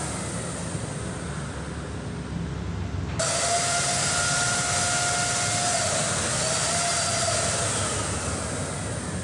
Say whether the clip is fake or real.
real